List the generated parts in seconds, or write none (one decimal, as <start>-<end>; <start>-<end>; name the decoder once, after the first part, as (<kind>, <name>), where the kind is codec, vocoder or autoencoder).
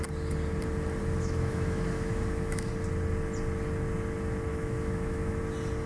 1.0-2.7 (autoencoder, DAC-VAE); 4.5-5.4